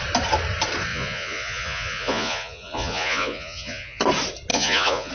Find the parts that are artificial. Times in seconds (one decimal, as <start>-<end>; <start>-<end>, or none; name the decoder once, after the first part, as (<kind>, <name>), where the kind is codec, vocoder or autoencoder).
0.9-4.0 (vocoder, Vocos); 4.5-5.1